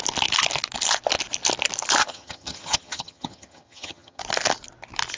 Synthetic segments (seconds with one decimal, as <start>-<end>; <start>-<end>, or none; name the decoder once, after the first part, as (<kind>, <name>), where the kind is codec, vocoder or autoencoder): 2.0-4.2 (vocoder, HiFi-GAN)